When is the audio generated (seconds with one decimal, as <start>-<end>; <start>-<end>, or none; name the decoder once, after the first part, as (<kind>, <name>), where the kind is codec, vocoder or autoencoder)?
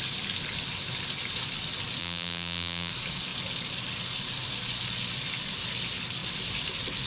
2.0-2.9 (vocoder, BigVGAN v2)